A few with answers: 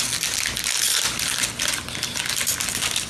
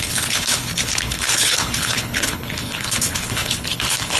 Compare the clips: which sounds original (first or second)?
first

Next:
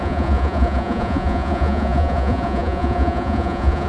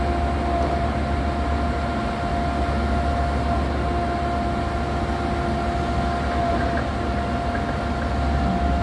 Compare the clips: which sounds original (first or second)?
second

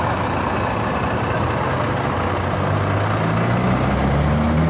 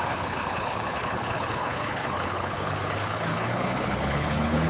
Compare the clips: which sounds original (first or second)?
first